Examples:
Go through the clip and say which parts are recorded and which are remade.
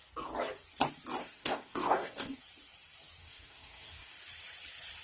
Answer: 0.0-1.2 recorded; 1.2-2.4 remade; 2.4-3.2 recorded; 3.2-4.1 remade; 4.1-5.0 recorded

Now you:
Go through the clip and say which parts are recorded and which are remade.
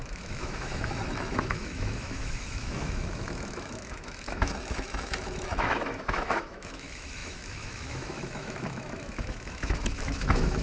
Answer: 0.0-10.6 remade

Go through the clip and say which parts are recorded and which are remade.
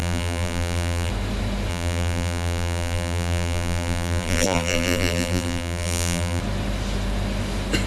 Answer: 0.0-1.1 remade; 1.1-1.7 recorded; 1.7-6.4 remade; 6.4-7.9 recorded